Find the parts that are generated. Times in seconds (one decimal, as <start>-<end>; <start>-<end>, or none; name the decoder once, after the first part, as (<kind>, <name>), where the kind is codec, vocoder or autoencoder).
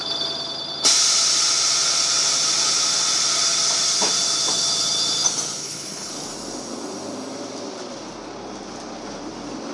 5.6-6.1 (codec, HILCodec)